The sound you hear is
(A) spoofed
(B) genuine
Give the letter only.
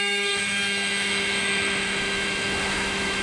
A